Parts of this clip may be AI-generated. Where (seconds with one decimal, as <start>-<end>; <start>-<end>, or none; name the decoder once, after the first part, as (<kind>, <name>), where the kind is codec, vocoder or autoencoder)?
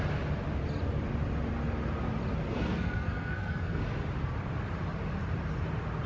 2.7-3.8 (codec, SNAC)